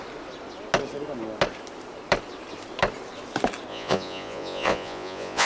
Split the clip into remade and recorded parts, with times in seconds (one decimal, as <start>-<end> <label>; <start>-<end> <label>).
0.0-3.7 recorded; 3.7-5.5 remade